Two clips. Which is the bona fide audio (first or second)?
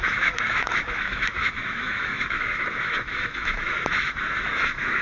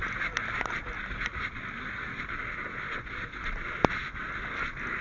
second